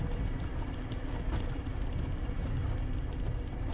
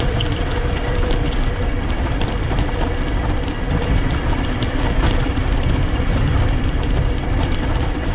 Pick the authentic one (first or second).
first